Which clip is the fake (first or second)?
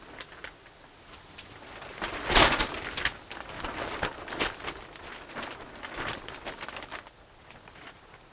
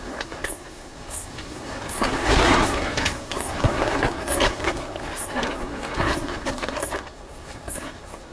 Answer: second